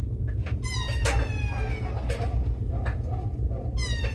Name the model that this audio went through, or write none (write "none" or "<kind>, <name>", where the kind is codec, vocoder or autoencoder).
none